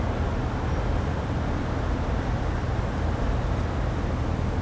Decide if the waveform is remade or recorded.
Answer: recorded